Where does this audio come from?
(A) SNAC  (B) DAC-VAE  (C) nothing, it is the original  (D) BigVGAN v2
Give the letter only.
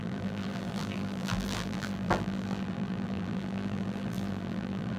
D